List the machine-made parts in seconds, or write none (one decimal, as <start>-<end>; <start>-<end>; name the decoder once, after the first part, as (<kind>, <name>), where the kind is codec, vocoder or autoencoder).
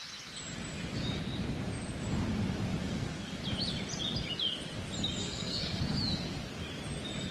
2.8-3.4 (codec, SNAC); 5.2-5.8